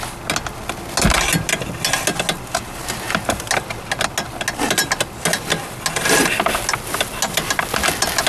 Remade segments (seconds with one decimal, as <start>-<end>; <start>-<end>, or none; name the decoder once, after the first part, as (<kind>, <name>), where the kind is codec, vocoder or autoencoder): none